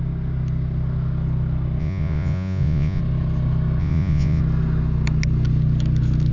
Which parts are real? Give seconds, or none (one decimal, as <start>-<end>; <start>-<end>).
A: 0.0-1.8; 3.0-3.8; 4.4-6.3